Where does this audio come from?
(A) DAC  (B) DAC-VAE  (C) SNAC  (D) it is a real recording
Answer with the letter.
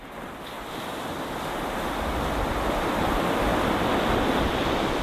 D